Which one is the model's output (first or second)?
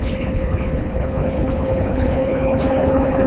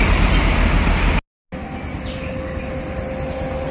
first